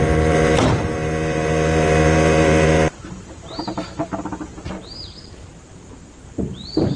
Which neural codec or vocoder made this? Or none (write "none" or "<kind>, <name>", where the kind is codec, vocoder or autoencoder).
vocoder, BigVGAN v2